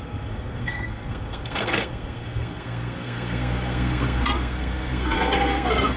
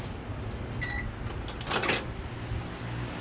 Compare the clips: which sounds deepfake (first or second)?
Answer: first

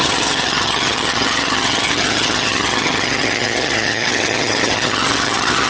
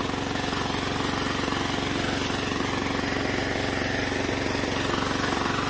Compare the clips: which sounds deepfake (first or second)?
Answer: first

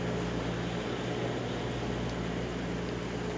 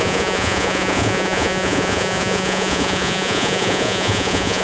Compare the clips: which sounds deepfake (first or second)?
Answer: second